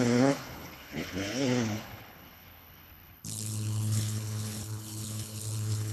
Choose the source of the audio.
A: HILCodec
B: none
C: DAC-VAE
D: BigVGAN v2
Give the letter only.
A